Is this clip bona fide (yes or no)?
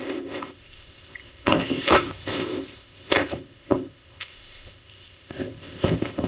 no